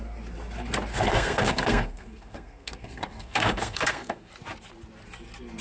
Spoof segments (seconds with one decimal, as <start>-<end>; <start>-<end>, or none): 0.9-4.3